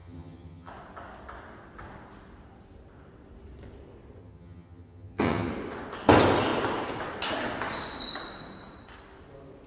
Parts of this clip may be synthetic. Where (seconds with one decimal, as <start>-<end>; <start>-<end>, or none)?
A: 0.0-0.7; 4.2-5.5